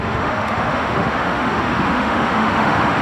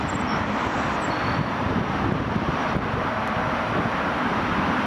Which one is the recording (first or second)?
second